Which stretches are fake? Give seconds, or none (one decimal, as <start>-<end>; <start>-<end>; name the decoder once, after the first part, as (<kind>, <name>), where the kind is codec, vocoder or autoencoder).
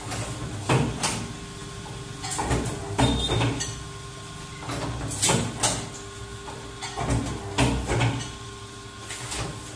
none